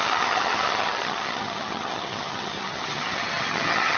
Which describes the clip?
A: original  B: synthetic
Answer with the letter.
B